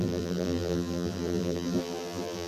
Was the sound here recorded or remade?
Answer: remade